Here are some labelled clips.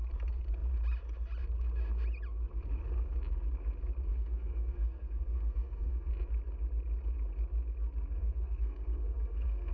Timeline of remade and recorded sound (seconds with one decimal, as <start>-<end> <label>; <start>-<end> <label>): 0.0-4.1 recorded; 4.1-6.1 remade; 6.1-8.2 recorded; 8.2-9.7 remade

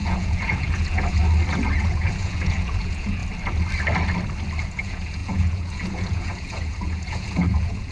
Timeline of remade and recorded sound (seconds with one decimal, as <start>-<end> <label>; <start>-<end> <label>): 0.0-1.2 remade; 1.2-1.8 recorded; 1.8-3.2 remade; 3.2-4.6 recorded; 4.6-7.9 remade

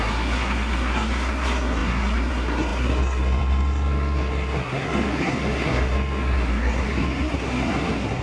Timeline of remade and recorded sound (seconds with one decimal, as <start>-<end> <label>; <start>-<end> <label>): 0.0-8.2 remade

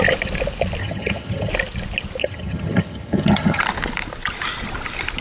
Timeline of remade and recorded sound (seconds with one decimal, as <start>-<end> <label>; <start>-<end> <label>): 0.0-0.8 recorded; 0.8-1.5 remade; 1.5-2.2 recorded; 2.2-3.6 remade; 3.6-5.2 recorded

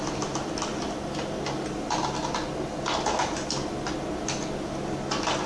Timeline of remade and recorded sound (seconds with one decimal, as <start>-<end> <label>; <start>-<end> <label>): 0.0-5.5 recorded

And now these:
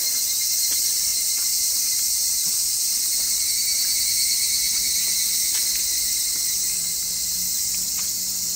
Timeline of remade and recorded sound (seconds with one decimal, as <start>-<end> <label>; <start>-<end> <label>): 0.0-8.6 recorded